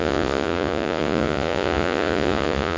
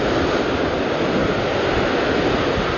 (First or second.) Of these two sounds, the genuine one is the second